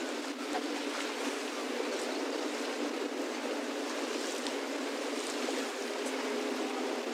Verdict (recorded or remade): recorded